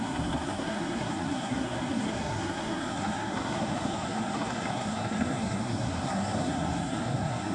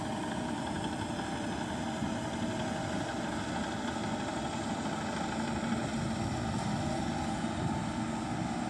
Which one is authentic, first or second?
second